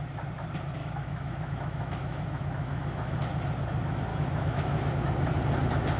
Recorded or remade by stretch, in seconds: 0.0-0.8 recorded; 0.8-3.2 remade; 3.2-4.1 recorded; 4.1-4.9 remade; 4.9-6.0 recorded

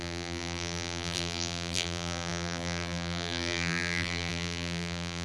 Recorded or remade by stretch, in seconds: 0.0-5.2 remade

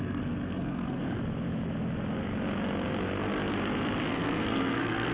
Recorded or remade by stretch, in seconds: 0.0-1.0 remade; 1.0-4.1 recorded; 4.1-5.1 remade

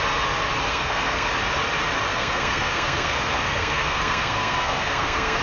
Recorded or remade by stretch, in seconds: 0.0-0.7 recorded; 0.7-1.3 remade; 1.3-2.1 recorded; 2.1-5.4 remade

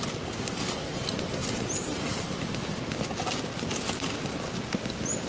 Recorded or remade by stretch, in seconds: 0.0-5.3 recorded

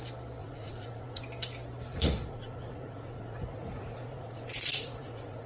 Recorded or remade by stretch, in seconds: 0.0-0.4 recorded; 0.4-1.2 remade; 1.2-1.9 recorded; 1.9-5.5 remade

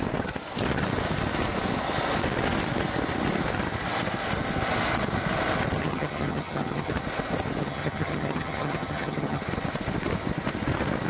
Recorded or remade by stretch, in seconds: 0.0-5.8 recorded; 5.8-6.9 remade; 6.9-7.6 recorded; 7.6-9.4 remade; 9.4-11.1 recorded

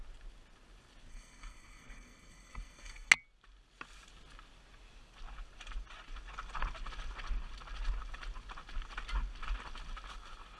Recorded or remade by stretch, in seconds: 0.0-1.1 recorded; 1.1-3.1 remade; 3.1-10.6 recorded